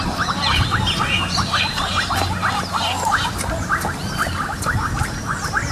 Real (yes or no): yes